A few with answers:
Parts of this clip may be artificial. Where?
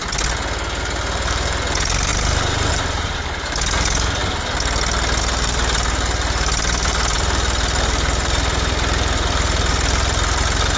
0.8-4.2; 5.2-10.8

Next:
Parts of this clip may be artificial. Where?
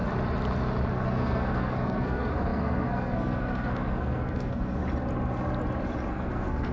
0.9-4.8; 6.1-6.7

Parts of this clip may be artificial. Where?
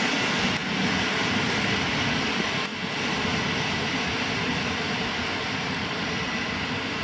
none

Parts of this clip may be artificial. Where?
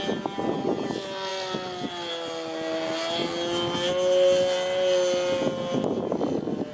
none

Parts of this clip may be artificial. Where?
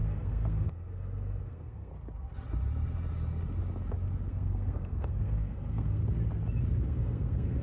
0.0-1.9; 4.3-6.0; 6.8-7.6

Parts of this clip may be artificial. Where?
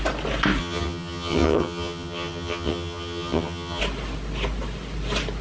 0.6-3.8